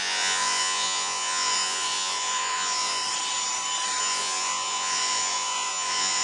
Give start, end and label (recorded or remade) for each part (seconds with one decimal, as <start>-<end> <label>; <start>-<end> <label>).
0.0-3.0 remade; 3.0-4.0 recorded; 4.0-6.2 remade